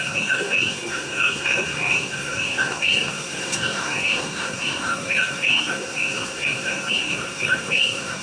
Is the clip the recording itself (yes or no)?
no